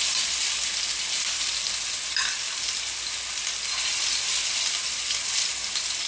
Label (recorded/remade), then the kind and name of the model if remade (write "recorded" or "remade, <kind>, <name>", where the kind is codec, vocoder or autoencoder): recorded